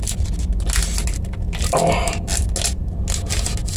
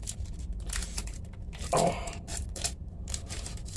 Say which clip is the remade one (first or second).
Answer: second